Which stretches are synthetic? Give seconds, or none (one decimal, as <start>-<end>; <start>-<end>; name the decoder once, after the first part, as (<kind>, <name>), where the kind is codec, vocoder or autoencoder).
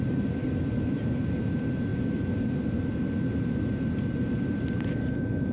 none